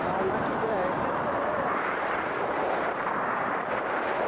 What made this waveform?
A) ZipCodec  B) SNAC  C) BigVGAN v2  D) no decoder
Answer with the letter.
C